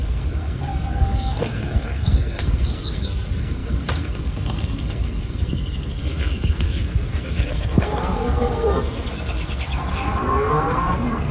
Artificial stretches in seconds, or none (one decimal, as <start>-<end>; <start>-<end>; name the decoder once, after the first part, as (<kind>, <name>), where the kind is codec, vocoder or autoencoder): 0.0-11.3 (codec, SNAC)